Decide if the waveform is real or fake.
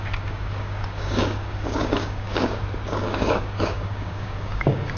fake